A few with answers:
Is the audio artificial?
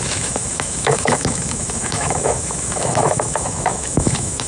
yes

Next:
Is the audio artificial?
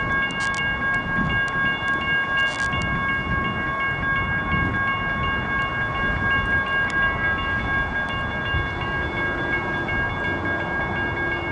no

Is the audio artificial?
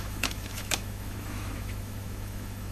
yes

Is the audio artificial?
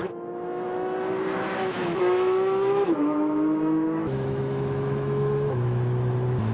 yes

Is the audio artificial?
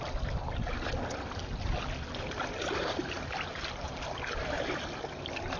no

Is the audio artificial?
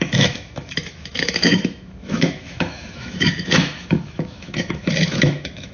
yes